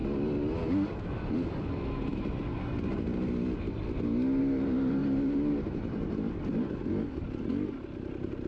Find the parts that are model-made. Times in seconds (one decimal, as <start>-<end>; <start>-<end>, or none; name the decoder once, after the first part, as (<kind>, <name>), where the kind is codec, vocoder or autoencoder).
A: 5.0-6.3 (vocoder, BigVGAN v2)